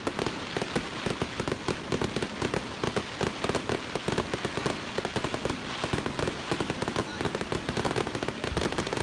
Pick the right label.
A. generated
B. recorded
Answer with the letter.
B